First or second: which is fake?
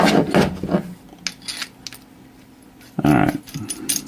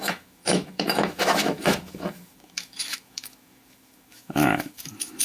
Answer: second